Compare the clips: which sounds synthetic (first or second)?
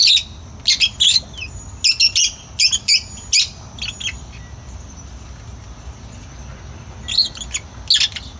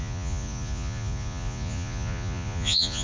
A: second